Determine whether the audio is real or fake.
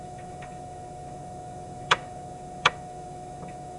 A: fake